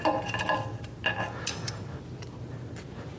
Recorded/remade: recorded